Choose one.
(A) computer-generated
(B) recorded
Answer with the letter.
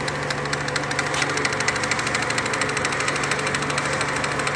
B